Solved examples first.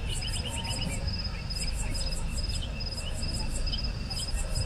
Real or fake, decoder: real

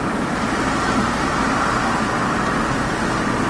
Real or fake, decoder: real